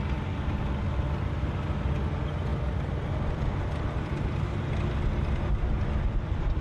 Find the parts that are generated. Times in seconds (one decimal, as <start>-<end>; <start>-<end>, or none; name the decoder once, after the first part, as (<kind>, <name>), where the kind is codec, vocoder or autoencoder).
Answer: 2.5-6.6 (vocoder, BigVGAN v2)